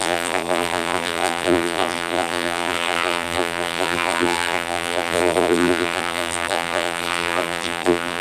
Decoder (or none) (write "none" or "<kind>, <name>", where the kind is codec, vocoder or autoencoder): vocoder, BigVGAN v2